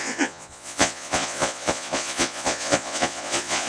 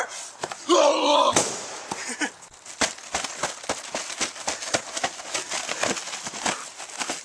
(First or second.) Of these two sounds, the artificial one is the first